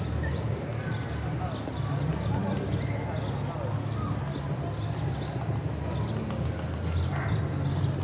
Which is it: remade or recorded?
recorded